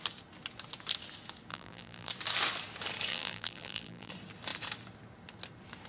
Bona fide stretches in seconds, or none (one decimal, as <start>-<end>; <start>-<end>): 0.0-1.5; 2.1-3.1; 4.1-5.9